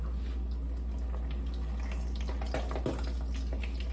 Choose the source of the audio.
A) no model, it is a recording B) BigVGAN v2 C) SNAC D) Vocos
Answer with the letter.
A